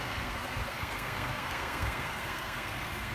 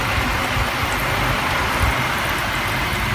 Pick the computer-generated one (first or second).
first